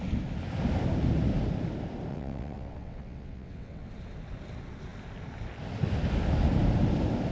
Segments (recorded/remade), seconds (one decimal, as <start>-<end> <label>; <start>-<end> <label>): 0.0-2.1 recorded; 2.1-3.9 remade; 3.9-7.3 recorded

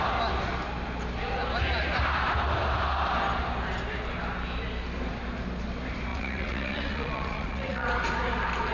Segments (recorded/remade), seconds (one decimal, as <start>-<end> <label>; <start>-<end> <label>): 0.0-6.1 recorded; 6.1-7.9 remade; 7.9-8.7 recorded

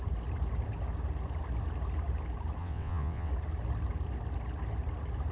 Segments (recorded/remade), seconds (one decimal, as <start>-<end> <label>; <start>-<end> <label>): 0.0-2.6 recorded; 2.6-3.3 remade; 3.3-5.3 recorded

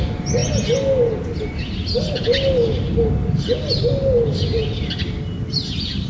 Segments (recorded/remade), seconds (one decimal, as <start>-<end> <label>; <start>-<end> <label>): 0.0-6.1 recorded

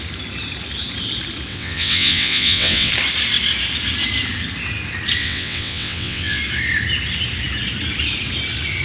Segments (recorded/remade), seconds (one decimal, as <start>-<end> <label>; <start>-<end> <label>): 0.0-1.5 recorded; 1.5-2.9 remade; 2.9-5.2 recorded; 5.2-6.4 remade; 6.4-8.8 recorded

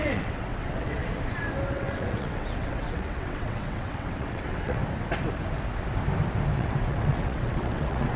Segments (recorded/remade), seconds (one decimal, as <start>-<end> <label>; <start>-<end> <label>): 0.0-1.0 remade; 1.0-1.7 recorded; 1.7-4.8 remade; 4.8-6.5 recorded; 6.5-8.2 remade

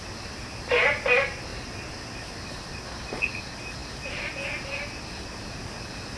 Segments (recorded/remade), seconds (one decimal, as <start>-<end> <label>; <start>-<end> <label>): 0.0-6.2 recorded